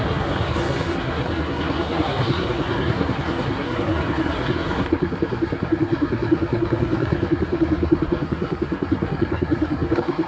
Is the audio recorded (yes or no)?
no